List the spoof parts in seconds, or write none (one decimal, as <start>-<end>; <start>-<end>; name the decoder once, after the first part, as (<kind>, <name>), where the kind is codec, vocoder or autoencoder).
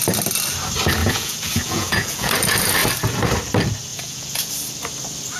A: 1.0-2.3 (vocoder, Vocos); 3.9-4.5